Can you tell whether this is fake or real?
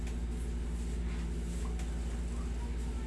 real